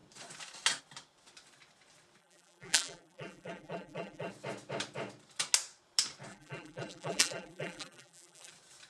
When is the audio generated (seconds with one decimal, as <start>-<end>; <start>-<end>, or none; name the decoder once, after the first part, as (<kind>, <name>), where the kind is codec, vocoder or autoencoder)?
2.2-4.3 (vocoder, BigVGAN v2); 6.3-8.5